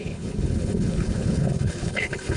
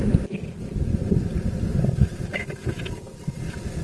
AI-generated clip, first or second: first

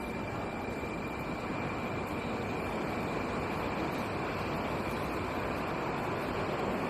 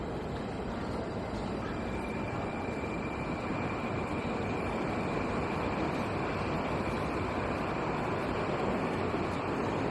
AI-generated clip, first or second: second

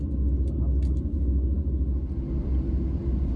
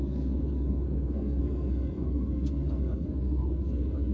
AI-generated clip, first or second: second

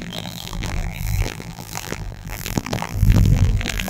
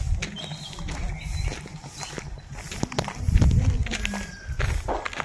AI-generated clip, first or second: first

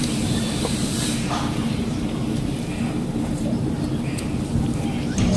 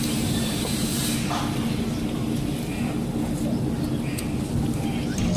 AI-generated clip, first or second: first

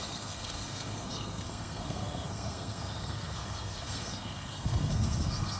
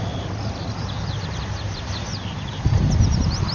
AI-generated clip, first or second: first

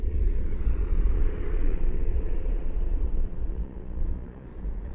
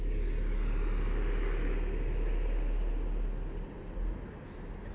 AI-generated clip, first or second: first